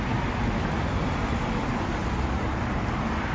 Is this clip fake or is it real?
real